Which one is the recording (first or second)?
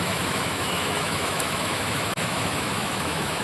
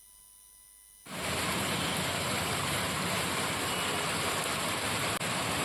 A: second